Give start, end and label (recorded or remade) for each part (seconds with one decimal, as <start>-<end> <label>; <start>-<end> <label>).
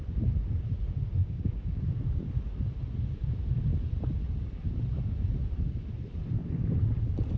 0.0-1.2 recorded; 1.2-1.8 remade; 1.8-7.4 recorded